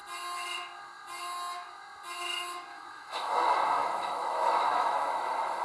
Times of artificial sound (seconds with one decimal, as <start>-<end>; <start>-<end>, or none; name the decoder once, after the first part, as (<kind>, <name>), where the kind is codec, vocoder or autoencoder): 2.7-3.3 (autoencoder, DAC-VAE); 3.8-5.6